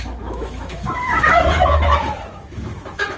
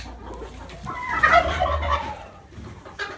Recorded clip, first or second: second